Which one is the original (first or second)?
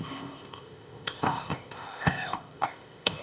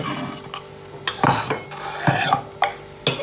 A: second